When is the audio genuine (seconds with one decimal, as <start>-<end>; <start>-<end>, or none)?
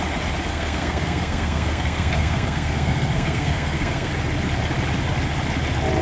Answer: 0.0-0.5; 4.1-6.0